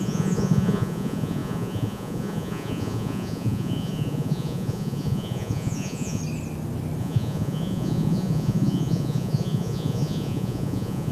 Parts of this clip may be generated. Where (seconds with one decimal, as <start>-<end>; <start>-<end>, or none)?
0.0-6.2; 7.0-11.1